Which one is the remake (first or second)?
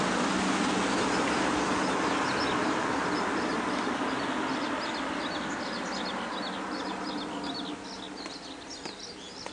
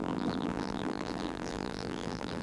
second